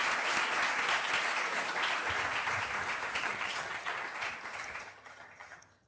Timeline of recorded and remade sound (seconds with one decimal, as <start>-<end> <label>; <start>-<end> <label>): 0.0-3.2 recorded; 3.2-3.9 remade; 3.9-4.8 recorded; 4.8-5.9 remade